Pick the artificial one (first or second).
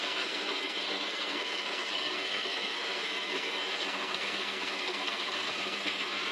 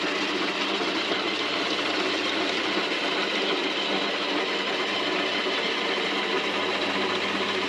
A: first